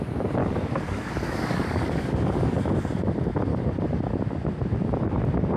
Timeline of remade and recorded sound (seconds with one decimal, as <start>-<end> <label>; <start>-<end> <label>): 0.0-0.4 recorded; 0.4-2.6 remade; 2.6-3.5 recorded; 3.5-4.0 remade; 4.0-5.6 recorded